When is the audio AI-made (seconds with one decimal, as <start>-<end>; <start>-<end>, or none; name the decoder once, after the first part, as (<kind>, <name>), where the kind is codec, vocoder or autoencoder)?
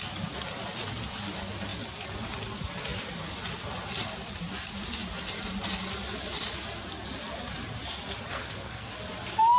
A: 8.3-8.9 (codec, SNAC)